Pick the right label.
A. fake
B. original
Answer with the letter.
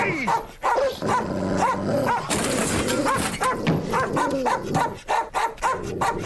B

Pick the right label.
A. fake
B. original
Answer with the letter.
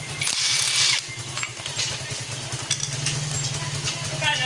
B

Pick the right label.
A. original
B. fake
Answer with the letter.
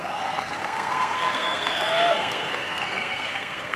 B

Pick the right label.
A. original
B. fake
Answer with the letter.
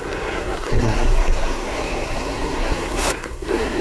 B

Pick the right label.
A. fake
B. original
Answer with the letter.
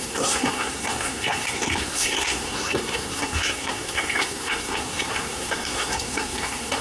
A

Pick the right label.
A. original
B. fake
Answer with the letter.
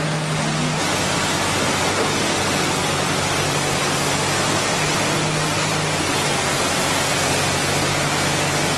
A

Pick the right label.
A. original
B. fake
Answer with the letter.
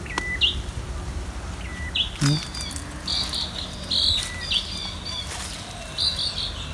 A